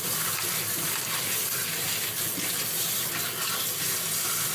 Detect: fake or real real